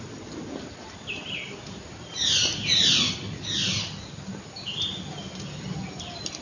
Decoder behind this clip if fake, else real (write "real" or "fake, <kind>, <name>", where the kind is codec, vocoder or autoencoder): real